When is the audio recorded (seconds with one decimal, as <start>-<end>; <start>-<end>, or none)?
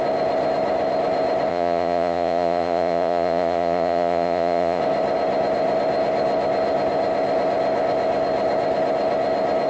0.0-1.5; 4.8-9.7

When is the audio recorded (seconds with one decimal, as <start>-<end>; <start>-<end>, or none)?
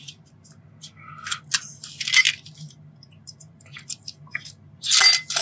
0.0-5.4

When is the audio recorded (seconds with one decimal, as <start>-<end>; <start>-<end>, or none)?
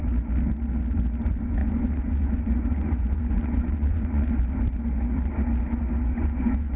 0.0-1.6; 4.4-6.1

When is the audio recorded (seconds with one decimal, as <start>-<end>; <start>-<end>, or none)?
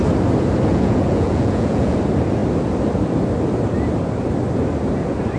0.0-0.7; 2.0-5.4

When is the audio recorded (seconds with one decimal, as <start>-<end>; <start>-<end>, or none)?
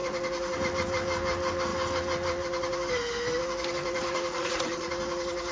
0.0-4.3; 4.9-5.5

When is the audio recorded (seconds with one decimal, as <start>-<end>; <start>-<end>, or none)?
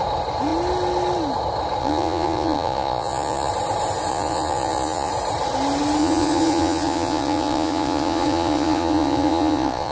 0.0-1.8; 3.5-4.1; 5.1-6.0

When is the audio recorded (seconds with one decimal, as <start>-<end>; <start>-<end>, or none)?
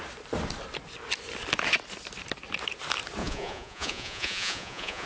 0.0-3.2